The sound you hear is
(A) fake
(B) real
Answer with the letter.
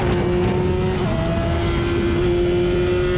B